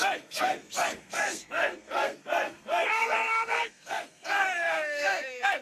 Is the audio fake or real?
fake